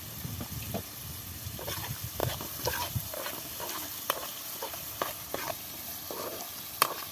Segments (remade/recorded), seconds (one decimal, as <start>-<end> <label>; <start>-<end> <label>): 0.0-7.1 recorded